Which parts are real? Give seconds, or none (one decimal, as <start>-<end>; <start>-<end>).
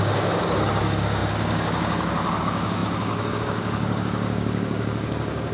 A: none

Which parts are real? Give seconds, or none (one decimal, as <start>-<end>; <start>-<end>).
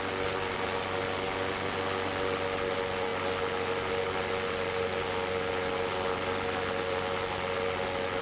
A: 0.0-8.2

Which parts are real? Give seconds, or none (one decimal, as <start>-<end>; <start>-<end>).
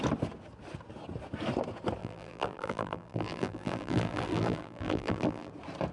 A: 0.0-2.0; 5.5-5.9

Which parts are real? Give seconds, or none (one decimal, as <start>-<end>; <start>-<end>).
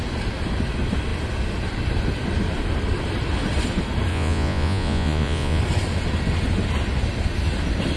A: 0.0-4.1; 5.6-8.0